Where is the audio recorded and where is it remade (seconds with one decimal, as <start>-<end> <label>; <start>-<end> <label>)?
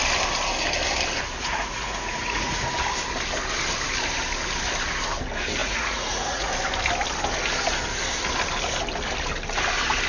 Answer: 0.0-1.4 recorded; 1.4-2.7 remade; 2.7-5.6 recorded; 5.6-6.5 remade; 6.5-10.1 recorded